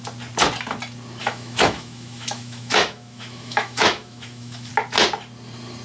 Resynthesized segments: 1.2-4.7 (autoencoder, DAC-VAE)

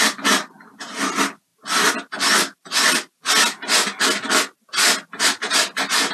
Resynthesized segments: none

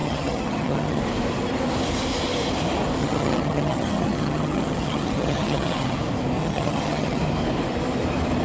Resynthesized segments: 0.0-1.0 (vocoder, HiFi-GAN); 3.0-6.0; 6.4-7.2

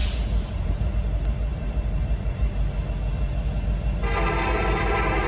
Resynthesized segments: 0.0-0.9 (vocoder, BigVGAN v2); 1.5-2.8

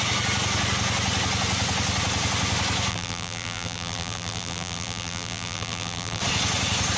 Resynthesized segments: 2.9-6.2 (vocoder, BigVGAN v2)

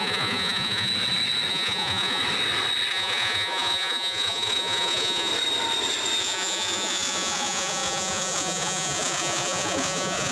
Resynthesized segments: 0.0-0.9 (vocoder, Vocos); 1.5-2.2; 2.9-5.3; 6.2-10.3